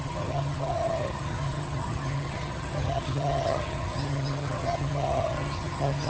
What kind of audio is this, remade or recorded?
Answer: remade